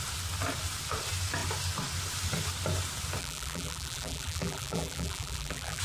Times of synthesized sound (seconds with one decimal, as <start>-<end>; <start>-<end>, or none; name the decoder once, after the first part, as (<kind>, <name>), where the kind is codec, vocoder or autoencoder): 3.2-5.8 (vocoder, BigVGAN v2)